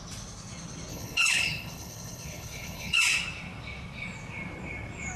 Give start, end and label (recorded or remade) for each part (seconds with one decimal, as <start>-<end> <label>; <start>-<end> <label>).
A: 0.0-0.9 recorded; 0.9-3.0 remade; 3.0-5.2 recorded